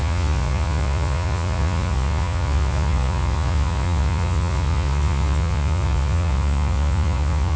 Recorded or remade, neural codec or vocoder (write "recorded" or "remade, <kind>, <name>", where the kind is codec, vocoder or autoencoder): remade, vocoder, Vocos